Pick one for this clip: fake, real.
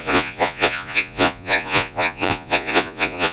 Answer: fake